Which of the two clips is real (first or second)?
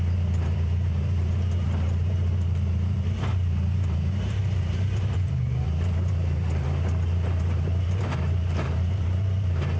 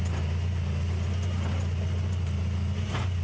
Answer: second